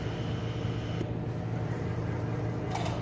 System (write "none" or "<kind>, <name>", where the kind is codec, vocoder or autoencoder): none